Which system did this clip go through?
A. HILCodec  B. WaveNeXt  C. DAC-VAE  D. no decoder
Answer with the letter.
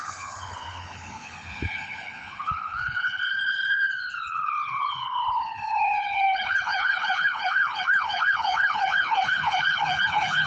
A